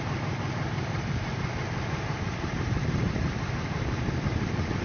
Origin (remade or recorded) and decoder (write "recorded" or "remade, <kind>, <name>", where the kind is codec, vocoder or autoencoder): remade, vocoder, BigVGAN v2